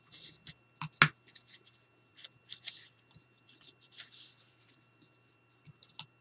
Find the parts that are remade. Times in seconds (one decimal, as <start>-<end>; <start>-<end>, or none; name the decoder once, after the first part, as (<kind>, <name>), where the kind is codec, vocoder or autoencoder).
2.1-5.7 (vocoder, BigVGAN v2)